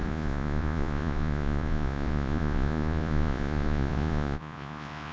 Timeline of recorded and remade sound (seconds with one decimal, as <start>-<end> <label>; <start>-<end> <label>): 0.0-5.1 remade